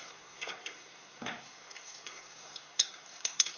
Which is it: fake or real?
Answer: fake